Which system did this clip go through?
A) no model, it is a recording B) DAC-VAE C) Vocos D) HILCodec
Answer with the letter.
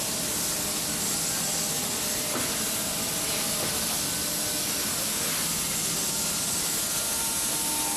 A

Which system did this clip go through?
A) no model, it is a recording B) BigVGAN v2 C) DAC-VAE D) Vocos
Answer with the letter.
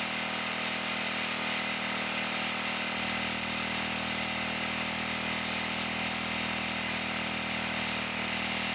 A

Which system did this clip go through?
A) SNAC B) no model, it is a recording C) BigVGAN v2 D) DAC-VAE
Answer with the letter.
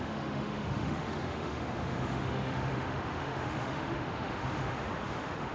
D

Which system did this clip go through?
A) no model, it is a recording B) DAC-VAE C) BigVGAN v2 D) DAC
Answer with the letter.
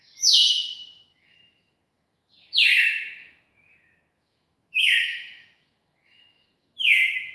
B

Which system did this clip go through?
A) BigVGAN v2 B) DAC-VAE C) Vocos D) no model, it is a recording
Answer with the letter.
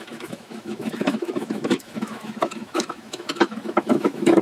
B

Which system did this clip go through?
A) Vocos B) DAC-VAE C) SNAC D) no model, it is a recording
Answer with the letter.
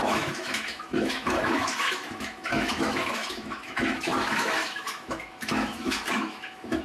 B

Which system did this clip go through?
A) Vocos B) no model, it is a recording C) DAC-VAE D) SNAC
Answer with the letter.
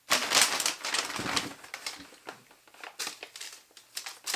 B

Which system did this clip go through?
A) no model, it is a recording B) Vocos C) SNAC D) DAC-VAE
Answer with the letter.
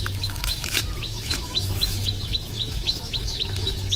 D